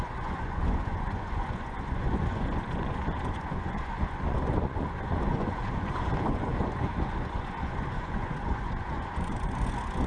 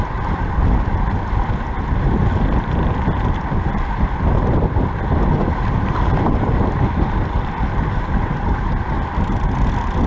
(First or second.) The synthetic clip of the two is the first